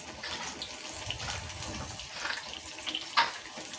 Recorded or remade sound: recorded